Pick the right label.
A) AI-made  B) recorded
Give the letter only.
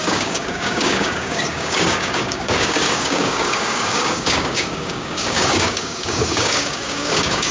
A